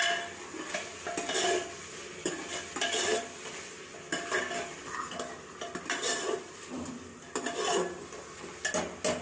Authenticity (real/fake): real